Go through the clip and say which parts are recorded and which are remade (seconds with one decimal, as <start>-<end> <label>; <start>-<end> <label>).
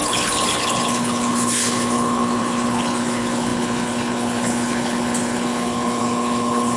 0.0-6.8 remade